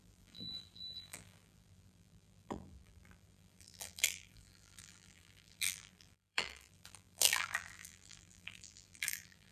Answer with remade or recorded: remade